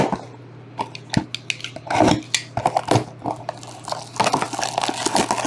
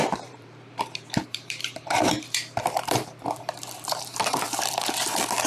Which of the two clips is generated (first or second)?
second